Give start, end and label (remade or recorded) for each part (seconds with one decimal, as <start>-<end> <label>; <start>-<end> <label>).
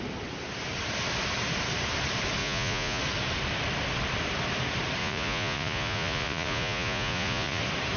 0.0-2.4 recorded; 2.4-3.0 remade; 3.0-5.0 recorded; 5.0-7.6 remade; 7.6-8.0 recorded